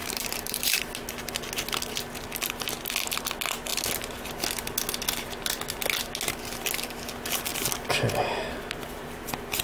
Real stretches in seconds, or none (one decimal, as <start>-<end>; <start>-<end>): 0.8-9.6

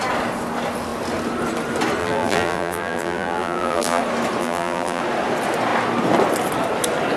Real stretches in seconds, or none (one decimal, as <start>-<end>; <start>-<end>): 0.0-2.0; 4.0-4.4; 5.0-7.2

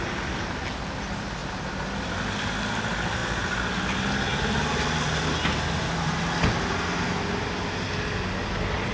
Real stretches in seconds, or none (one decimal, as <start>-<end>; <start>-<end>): 0.0-8.9